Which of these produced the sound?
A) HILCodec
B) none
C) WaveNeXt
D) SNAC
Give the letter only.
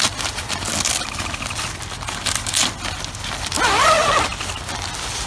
B